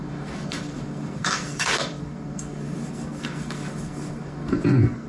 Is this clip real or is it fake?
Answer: fake